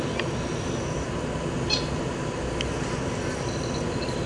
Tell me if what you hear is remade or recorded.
recorded